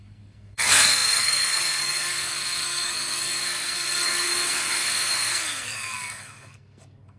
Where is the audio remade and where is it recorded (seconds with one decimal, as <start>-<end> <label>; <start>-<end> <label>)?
0.0-7.2 remade